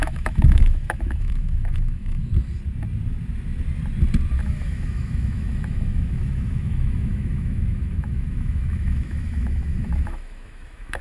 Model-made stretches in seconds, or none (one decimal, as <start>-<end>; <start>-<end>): 0.0-2.3; 4.4-11.0